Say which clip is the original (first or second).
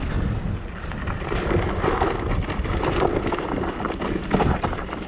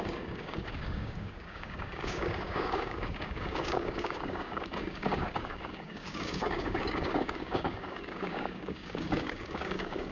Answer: first